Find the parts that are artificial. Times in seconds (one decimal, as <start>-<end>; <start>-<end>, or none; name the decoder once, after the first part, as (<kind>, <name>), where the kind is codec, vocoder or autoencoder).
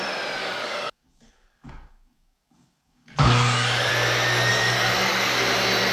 0.4-3.9 (codec, DAC); 4.5-5.4